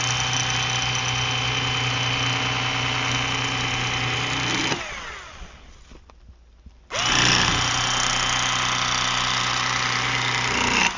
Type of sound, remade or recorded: recorded